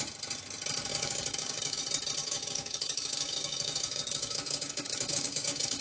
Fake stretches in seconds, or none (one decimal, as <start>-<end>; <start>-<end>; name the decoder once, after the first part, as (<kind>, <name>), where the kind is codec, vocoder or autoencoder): 0.9-1.8 (codec, DAC); 2.2-5.8

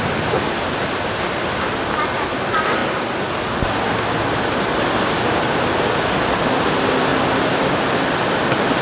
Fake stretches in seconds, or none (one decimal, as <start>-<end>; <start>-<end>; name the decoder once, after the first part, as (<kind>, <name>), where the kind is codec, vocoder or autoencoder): none

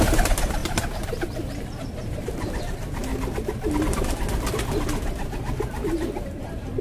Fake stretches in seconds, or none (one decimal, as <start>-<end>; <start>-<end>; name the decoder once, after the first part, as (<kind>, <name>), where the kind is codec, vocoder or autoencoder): 0.0-3.1 (vocoder, BigVGAN v2); 6.2-6.8

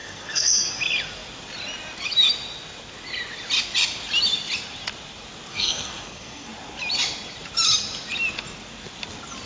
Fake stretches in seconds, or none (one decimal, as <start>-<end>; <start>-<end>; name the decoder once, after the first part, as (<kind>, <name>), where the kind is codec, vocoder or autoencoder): 0.0-0.7 (codec, SNAC); 5.5-6.5

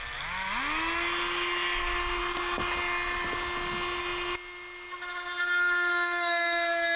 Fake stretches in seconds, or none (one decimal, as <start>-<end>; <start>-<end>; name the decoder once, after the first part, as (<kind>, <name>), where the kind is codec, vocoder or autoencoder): none